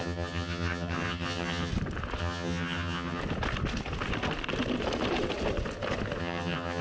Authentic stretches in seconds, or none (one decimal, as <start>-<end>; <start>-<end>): 1.7-2.2; 3.2-6.2